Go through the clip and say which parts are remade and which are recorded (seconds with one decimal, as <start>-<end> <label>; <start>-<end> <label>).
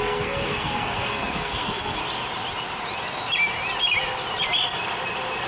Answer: 0.0-2.0 remade; 2.0-5.5 recorded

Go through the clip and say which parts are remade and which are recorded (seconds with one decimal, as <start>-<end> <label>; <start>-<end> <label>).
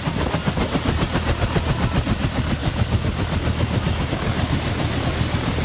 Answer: 0.0-5.6 recorded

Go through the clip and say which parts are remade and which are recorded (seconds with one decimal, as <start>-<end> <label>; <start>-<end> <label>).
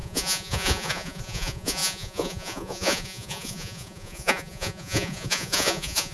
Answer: 0.0-6.1 remade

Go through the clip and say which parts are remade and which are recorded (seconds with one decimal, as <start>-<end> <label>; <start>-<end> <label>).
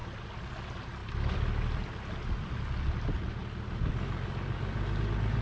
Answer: 0.0-1.0 recorded; 1.0-2.5 remade; 2.5-3.4 recorded; 3.4-3.9 remade; 3.9-5.4 recorded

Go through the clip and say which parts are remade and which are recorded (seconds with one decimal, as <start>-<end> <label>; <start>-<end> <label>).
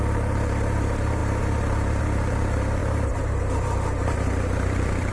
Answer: 0.0-5.1 remade